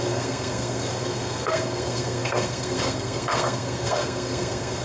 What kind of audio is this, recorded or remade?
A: remade